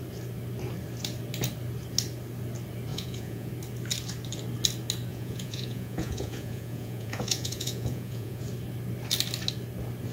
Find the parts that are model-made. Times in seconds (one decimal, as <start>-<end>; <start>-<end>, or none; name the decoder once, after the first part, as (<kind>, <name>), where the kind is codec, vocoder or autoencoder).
2.9-3.5 (vocoder, Vocos); 5.1-8.4